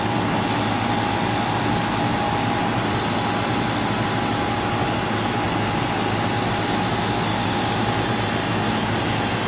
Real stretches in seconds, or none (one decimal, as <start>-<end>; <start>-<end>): 0.0-7.3; 8.0-9.5